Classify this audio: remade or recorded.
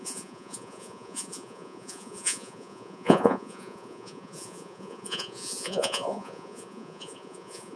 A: remade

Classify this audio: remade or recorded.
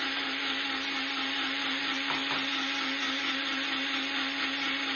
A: recorded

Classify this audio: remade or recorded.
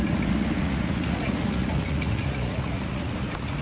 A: remade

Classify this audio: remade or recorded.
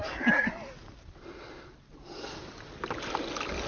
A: recorded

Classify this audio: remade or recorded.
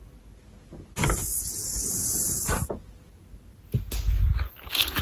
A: recorded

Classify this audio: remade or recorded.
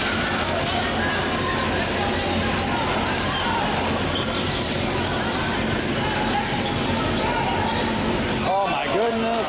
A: recorded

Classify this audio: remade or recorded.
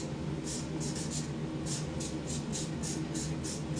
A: recorded